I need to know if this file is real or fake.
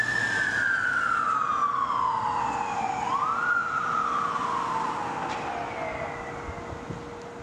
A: real